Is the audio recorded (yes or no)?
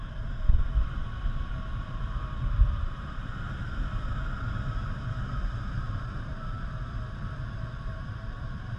no